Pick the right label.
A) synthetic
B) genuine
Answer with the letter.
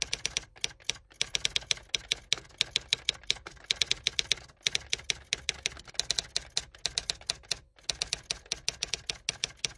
B